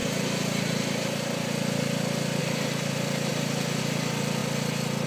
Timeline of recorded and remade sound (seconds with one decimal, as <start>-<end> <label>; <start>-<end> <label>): 0.0-2.4 recorded; 2.4-4.4 remade; 4.4-5.1 recorded